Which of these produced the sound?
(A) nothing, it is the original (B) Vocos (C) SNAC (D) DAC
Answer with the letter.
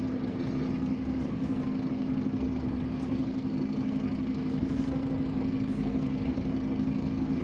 C